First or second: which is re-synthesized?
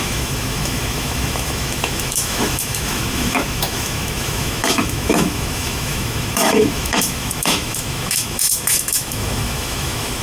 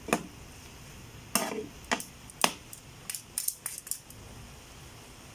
first